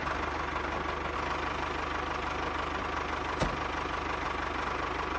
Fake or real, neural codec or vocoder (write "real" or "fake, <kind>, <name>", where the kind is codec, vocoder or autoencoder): real